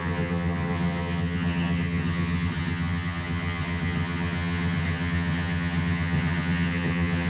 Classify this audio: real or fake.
fake